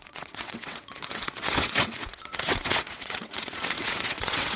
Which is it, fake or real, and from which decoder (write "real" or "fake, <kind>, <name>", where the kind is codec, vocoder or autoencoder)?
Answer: fake, vocoder, WaveNeXt